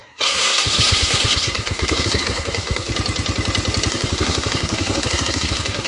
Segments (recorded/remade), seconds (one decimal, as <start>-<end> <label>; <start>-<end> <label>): 0.0-2.9 remade; 2.9-3.9 recorded; 3.9-5.9 remade